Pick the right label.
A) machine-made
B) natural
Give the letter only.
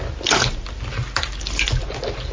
B